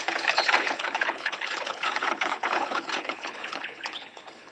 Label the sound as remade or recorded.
remade